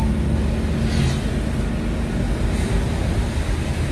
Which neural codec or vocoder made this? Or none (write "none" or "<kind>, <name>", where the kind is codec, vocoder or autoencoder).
none